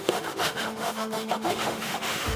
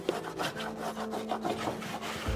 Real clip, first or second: second